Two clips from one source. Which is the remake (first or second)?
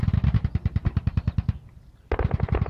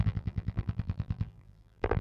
second